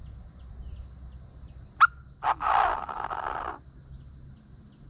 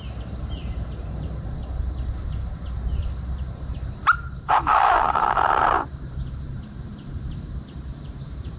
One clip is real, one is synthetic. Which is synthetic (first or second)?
second